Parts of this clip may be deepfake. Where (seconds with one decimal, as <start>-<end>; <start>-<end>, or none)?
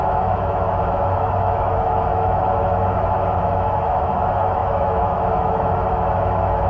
0.0-6.7